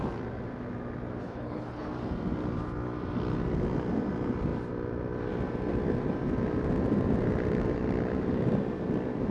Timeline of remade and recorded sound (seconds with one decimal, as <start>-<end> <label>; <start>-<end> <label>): 0.0-1.2 recorded; 1.2-1.9 remade; 1.9-9.3 recorded